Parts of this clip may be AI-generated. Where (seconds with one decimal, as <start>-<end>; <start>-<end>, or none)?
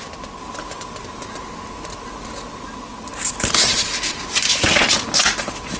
none